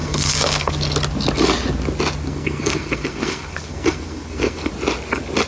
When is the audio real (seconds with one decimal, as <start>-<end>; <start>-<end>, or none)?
0.7-2.2; 4.7-5.5